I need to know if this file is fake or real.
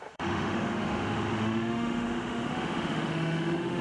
fake